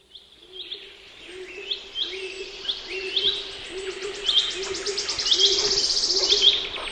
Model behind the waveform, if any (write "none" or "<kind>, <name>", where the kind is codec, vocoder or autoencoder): none